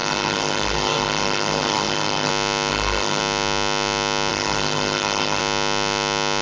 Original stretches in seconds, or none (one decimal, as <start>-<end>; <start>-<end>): 2.3-2.7; 3.2-4.3; 5.4-6.4